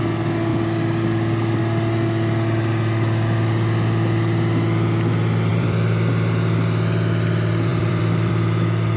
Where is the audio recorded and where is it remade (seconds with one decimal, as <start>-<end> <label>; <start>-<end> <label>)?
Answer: 0.0-0.5 recorded; 0.5-1.6 remade; 1.6-5.5 recorded; 5.5-6.1 remade; 6.1-7.7 recorded; 7.7-8.3 remade; 8.3-9.0 recorded